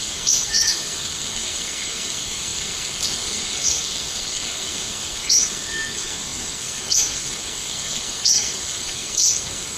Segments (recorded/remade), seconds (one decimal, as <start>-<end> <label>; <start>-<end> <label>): 0.0-9.8 remade